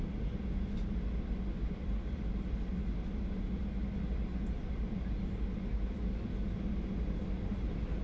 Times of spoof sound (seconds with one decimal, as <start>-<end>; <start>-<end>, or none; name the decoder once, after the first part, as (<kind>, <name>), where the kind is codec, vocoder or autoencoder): none